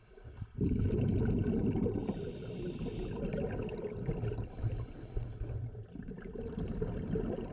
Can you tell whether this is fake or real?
real